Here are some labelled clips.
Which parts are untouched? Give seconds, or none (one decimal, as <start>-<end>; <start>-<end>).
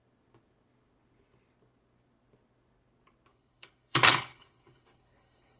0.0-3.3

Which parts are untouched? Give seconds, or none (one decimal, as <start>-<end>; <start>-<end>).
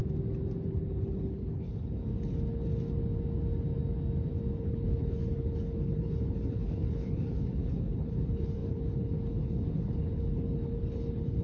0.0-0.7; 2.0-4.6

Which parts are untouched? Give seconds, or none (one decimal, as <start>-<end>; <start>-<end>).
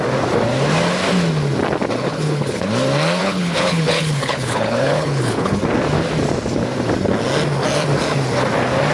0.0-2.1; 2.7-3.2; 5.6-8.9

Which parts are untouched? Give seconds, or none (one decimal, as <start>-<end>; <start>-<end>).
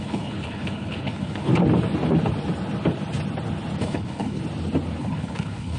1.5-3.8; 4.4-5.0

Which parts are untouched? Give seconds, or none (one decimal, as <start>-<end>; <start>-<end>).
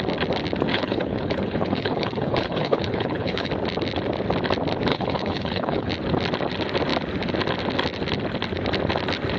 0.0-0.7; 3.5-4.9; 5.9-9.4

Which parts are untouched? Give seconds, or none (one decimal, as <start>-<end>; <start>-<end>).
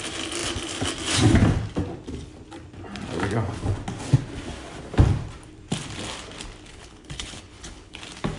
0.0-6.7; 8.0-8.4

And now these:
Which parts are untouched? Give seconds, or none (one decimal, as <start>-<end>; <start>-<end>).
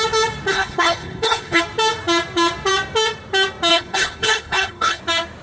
0.0-0.5; 1.6-3.7; 5.0-5.4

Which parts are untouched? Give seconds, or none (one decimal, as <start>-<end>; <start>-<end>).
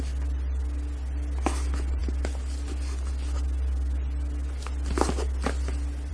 0.0-6.1